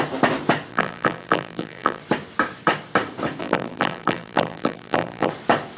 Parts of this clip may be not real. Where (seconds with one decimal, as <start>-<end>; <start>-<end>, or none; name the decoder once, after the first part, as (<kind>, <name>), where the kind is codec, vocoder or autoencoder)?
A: 0.7-2.0 (vocoder, BigVGAN v2); 3.4-5.3